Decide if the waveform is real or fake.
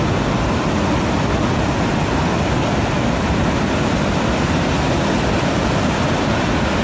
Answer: real